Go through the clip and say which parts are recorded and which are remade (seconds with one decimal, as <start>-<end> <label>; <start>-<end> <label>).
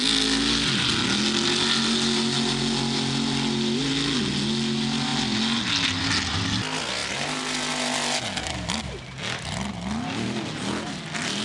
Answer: 0.0-11.4 recorded